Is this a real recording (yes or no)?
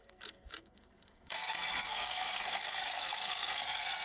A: no